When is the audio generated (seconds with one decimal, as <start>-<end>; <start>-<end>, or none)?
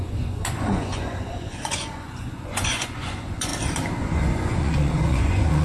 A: 0.0-3.5; 4.0-5.6